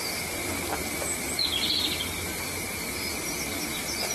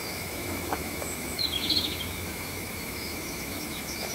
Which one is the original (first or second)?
first